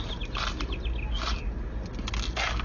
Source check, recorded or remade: recorded